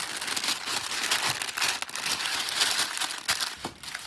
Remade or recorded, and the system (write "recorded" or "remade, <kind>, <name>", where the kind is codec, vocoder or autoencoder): recorded